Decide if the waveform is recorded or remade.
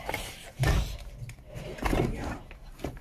remade